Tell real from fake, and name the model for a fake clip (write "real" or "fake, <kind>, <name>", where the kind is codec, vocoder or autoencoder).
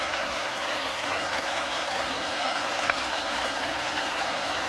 fake, codec, SNAC